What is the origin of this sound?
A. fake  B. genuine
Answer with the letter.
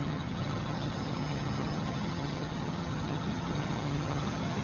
A